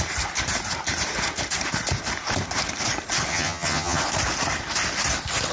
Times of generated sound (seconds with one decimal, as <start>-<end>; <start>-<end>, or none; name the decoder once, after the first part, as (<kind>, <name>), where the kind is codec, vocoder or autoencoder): 3.3-4.0 (vocoder, HiFi-GAN)